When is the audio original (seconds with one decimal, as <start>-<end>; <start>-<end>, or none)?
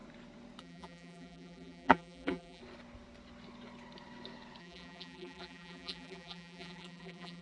0.0-0.6; 2.6-4.6